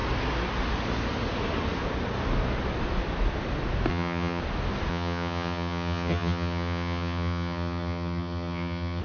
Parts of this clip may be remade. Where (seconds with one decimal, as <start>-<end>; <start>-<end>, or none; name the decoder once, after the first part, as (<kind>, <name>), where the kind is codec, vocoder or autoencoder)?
3.9-4.4 (vocoder, HiFi-GAN); 4.9-9.0